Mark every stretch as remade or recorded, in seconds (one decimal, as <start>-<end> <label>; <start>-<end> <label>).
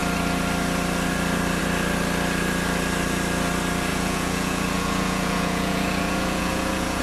0.0-3.9 recorded; 3.9-7.0 remade